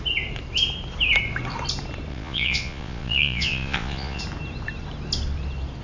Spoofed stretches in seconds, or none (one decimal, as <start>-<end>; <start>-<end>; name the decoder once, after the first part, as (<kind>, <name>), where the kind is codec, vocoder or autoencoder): 2.1-4.2 (vocoder, Vocos)

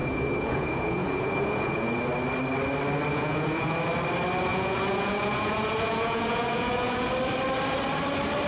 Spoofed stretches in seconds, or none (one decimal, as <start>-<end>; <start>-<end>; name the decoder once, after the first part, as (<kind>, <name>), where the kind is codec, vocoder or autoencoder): 0.0-2.0 (vocoder, Vocos); 3.1-3.8; 4.5-7.1